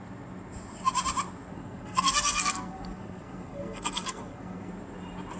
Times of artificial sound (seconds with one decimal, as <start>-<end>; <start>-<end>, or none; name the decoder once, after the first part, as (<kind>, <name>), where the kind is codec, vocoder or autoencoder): 1.5-4.7 (codec, SNAC)